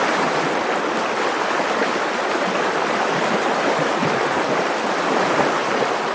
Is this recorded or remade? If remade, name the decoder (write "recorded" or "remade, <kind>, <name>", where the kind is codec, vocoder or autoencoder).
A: recorded